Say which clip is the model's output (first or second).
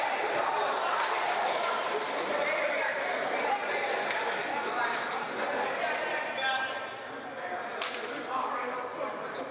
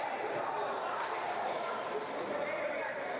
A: first